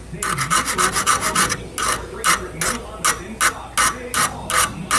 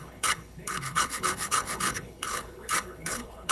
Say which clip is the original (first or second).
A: first